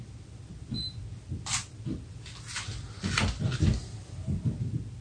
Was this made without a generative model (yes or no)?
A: yes